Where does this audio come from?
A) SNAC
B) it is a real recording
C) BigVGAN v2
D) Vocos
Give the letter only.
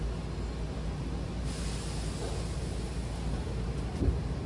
B